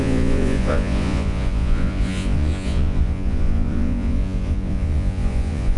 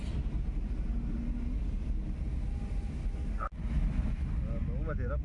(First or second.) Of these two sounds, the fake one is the first